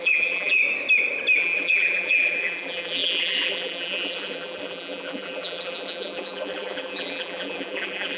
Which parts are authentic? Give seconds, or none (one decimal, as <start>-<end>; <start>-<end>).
0.6-1.4